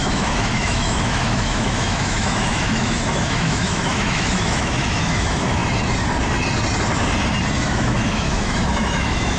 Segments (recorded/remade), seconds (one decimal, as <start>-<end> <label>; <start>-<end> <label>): 0.0-5.6 remade; 5.6-7.6 recorded; 7.6-9.4 remade